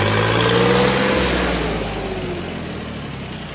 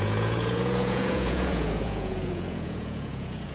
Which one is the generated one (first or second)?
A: second